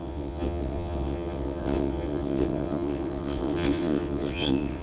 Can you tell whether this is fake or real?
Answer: fake